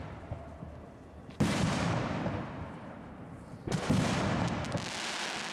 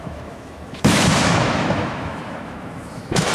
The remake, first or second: second